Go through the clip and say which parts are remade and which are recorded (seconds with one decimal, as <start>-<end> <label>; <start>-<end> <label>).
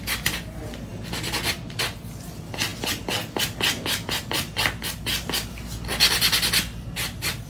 0.0-7.5 recorded